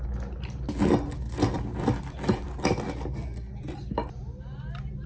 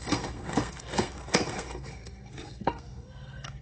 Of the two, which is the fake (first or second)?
second